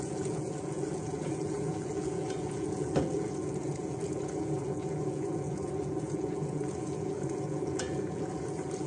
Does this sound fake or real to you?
fake